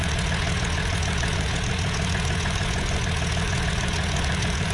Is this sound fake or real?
fake